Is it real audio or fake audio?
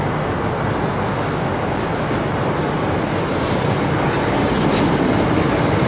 real